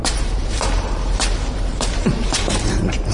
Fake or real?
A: fake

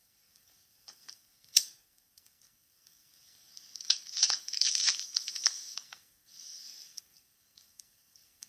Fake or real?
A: fake